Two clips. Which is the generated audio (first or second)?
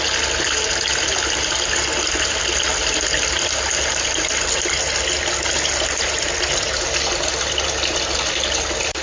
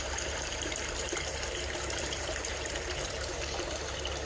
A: second